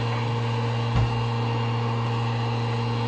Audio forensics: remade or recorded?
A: recorded